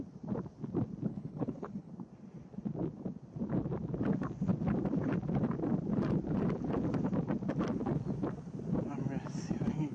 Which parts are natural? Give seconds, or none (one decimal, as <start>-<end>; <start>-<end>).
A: 0.0-1.1; 1.9-9.9